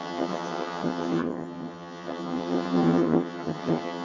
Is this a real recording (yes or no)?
no